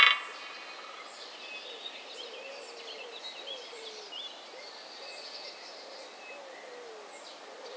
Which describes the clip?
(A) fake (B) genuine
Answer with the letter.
B